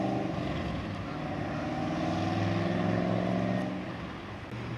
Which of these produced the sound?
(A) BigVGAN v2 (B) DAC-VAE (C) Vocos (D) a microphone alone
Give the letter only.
D